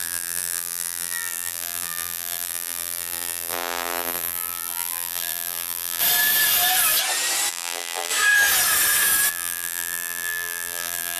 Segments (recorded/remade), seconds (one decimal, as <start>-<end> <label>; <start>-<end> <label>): 0.0-6.0 remade; 6.0-7.5 recorded; 7.5-8.1 remade; 8.1-9.3 recorded; 9.3-11.2 remade